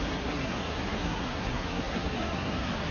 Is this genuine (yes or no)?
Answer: no